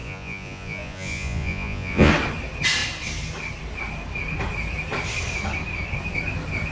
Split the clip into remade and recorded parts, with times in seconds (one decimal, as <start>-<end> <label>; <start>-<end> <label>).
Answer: 0.0-2.1 remade; 2.1-6.7 recorded